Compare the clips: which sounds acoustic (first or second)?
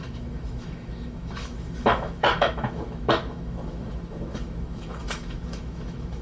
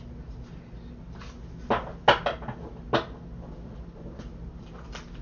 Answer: second